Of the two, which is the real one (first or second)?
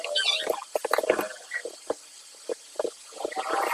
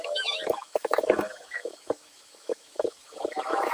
first